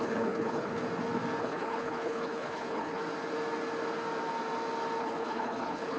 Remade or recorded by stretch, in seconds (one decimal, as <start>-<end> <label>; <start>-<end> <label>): 0.0-0.8 remade; 0.8-1.4 recorded; 1.4-3.0 remade; 3.0-5.0 recorded; 5.0-6.0 remade